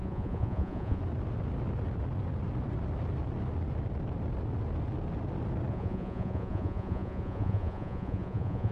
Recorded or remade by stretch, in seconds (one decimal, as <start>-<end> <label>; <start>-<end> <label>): 0.0-1.0 remade; 1.0-5.7 recorded; 5.7-8.7 remade